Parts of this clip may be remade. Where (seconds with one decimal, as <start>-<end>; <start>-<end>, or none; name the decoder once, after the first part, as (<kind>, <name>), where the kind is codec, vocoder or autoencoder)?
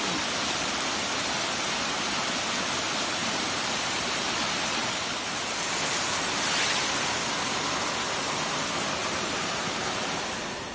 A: 3.2-5.0 (vocoder, BigVGAN v2); 9.0-10.2